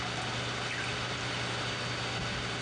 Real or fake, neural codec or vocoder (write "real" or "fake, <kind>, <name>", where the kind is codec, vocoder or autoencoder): real